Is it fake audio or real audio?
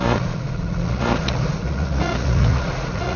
fake